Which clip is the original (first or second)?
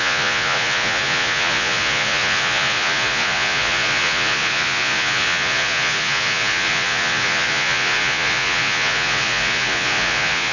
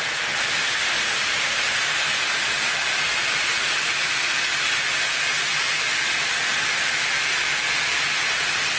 second